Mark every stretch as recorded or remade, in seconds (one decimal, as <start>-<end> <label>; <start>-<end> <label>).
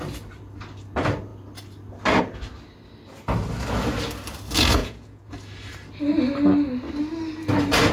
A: 0.0-4.8 recorded; 4.8-5.3 remade; 5.3-7.9 recorded